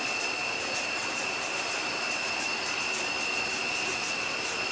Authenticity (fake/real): real